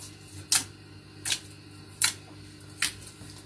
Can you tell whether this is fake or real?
real